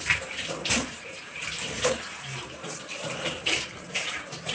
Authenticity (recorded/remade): remade